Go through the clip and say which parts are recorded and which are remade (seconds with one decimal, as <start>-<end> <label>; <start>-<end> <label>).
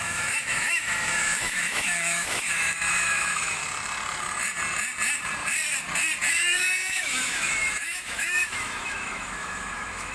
0.0-3.6 remade; 3.6-6.3 recorded; 6.3-10.1 remade